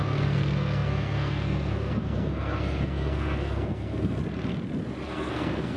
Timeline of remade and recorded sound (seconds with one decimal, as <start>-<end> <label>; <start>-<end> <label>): 0.0-4.2 remade; 4.2-5.1 recorded; 5.1-5.8 remade